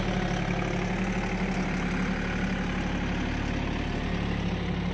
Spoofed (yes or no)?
no